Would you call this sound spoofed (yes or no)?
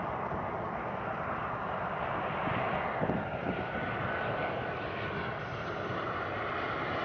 no